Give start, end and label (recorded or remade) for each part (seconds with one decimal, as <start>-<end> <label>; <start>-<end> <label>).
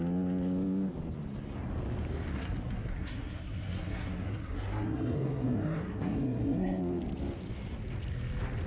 0.0-2.3 recorded; 2.3-6.8 remade; 6.8-8.7 recorded